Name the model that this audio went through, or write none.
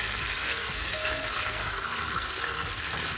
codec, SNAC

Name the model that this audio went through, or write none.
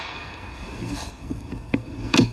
codec, SNAC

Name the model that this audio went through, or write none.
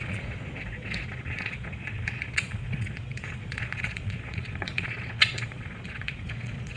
vocoder, Vocos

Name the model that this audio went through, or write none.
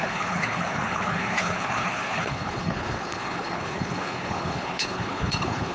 codec, HILCodec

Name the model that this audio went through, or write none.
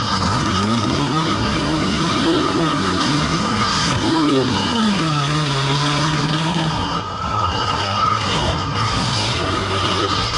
codec, SNAC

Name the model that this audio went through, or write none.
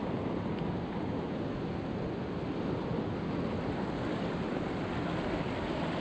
none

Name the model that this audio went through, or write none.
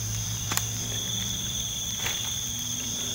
vocoder, BigVGAN v2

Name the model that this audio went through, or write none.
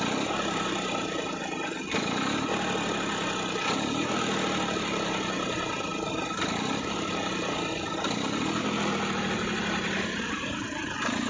none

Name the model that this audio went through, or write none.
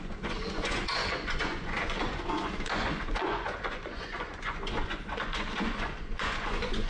vocoder, Vocos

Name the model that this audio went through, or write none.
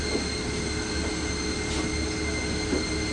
none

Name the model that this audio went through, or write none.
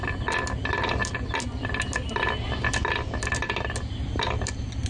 none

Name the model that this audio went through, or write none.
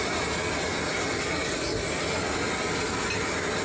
none